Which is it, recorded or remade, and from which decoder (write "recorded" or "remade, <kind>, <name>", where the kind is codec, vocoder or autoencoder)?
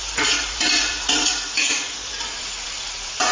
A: remade, vocoder, Vocos